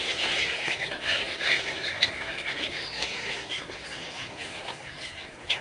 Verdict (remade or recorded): remade